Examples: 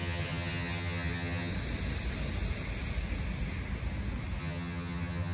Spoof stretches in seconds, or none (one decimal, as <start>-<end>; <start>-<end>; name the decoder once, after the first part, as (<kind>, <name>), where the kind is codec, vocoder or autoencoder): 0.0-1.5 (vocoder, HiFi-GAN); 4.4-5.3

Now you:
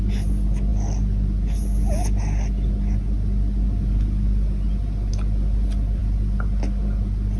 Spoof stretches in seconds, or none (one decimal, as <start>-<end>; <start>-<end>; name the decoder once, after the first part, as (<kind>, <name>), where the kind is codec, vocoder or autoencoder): none

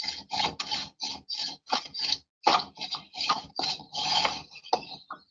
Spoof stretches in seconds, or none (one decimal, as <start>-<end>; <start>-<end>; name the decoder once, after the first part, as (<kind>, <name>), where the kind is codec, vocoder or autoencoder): none

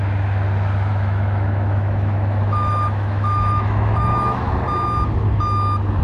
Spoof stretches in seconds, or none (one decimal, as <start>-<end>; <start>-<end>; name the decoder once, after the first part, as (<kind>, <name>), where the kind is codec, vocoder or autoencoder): 0.9-4.5 (autoencoder, DAC-VAE)

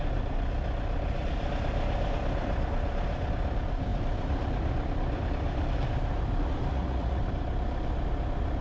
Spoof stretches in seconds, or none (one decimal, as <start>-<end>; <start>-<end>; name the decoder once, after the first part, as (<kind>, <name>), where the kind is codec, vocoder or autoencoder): 6.7-7.2 (vocoder, Vocos)

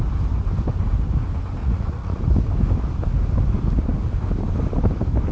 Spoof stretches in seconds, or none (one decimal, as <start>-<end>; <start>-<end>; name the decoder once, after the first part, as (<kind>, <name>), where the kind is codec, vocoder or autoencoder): 1.6-2.2 (vocoder, Vocos)

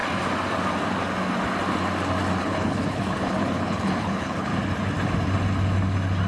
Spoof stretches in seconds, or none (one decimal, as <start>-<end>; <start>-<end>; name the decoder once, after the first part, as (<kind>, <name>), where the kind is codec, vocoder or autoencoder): 2.4-4.5 (codec, HILCodec)

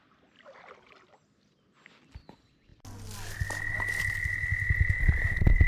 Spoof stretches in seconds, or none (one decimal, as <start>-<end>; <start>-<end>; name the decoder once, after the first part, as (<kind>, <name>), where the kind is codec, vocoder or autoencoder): none